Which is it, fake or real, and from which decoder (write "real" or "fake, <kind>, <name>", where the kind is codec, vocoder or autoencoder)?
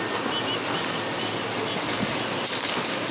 real